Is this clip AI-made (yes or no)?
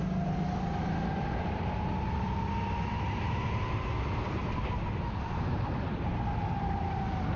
no